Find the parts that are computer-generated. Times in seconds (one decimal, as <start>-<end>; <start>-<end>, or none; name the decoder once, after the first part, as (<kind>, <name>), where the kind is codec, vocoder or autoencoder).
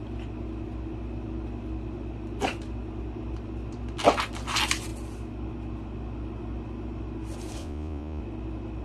7.6-8.2 (vocoder, Vocos)